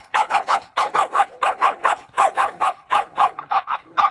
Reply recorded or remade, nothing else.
remade